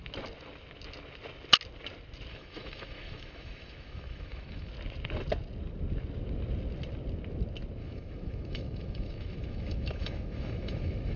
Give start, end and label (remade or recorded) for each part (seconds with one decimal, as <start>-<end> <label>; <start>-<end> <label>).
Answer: 0.0-2.3 recorded; 2.3-4.7 remade; 4.7-7.8 recorded; 7.8-11.2 remade